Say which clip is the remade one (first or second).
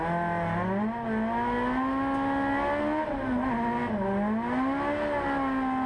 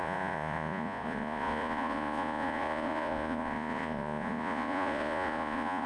second